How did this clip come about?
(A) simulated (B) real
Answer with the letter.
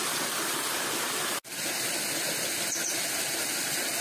B